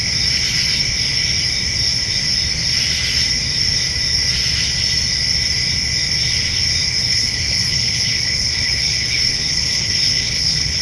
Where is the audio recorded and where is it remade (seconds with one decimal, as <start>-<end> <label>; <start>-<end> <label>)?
0.0-7.0 recorded; 7.0-10.8 remade